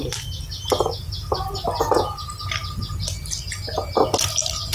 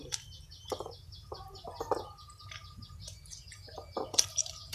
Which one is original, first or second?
first